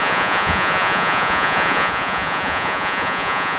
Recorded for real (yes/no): no